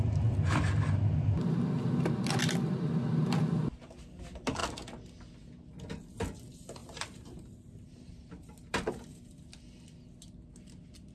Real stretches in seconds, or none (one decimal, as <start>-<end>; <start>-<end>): 0.0-6.8; 9.4-11.1